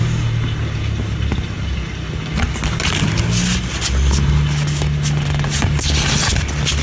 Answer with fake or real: real